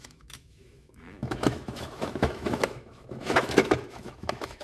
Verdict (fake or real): fake